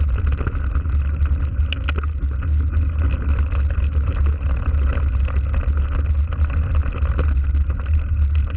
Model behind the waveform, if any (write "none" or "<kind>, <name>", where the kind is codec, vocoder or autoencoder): none